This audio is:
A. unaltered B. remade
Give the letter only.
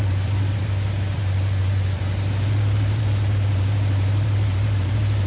B